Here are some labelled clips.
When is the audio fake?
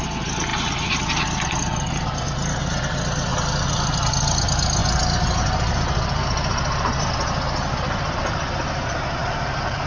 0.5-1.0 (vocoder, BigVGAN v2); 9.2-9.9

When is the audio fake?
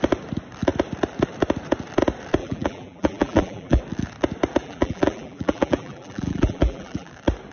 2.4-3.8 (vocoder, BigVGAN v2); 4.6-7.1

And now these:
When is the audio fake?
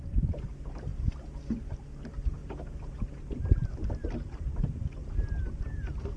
0.0-0.9 (vocoder, BigVGAN v2); 1.5-6.2